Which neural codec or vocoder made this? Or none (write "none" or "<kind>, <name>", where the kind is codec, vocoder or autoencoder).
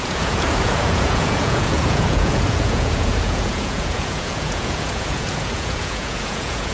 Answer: vocoder, Vocos